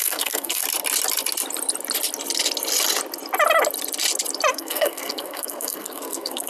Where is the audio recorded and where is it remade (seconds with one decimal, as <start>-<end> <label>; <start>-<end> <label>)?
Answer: 0.0-0.6 remade; 0.6-4.5 recorded; 4.5-6.5 remade